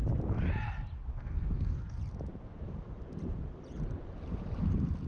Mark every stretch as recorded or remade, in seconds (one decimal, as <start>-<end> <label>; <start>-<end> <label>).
0.0-1.1 recorded; 1.1-2.0 remade; 2.0-5.1 recorded